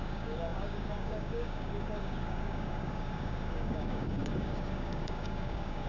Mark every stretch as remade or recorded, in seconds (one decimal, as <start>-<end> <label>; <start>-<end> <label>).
0.0-5.9 remade